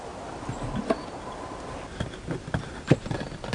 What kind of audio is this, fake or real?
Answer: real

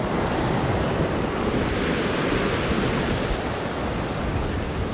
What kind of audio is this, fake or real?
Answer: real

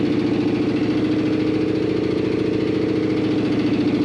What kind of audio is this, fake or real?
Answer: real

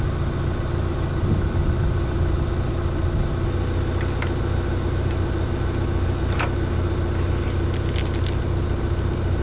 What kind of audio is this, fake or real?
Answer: real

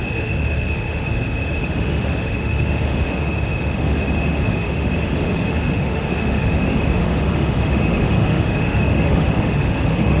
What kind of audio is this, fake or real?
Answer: fake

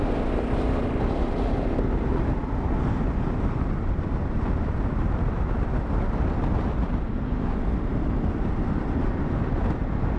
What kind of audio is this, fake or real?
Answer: real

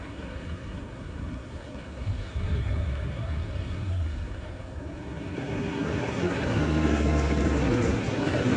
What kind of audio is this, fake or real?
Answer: fake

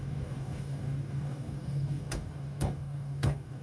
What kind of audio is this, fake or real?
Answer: fake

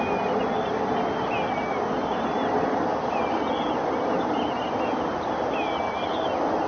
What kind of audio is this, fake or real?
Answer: real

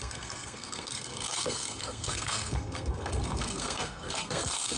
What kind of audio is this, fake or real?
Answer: fake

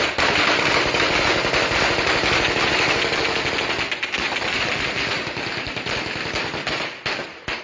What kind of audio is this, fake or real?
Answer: real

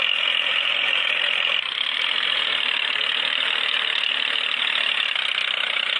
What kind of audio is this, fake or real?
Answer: fake